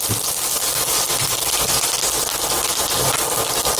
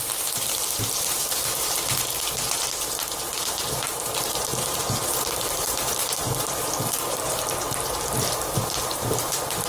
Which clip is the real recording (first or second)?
first